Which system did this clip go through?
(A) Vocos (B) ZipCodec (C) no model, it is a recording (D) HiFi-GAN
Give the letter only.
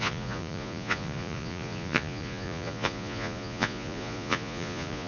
A